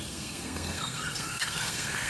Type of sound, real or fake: fake